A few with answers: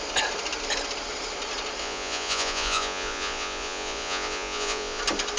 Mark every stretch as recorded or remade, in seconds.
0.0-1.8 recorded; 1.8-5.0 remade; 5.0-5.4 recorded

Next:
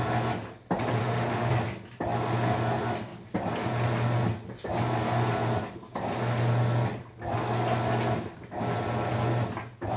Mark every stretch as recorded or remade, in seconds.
0.0-1.0 recorded; 1.0-1.5 remade; 1.5-10.0 recorded

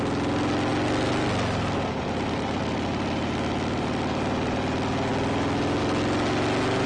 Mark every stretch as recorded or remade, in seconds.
0.0-6.9 recorded

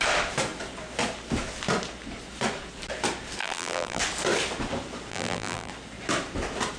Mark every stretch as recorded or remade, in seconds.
0.0-3.4 recorded; 3.4-4.0 remade; 4.0-5.1 recorded; 5.1-5.7 remade; 5.7-6.8 recorded

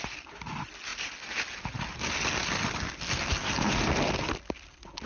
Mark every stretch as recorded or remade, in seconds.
0.0-5.1 recorded

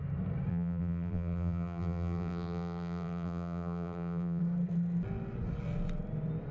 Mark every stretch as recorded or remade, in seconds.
0.0-0.5 recorded; 0.5-4.4 remade; 4.4-6.5 recorded